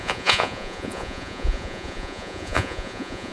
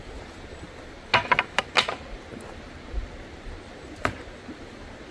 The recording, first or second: second